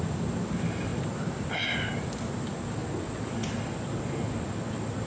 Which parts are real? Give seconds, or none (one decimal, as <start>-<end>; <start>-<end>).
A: 0.0-5.1